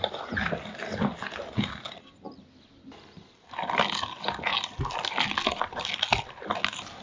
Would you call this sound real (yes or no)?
yes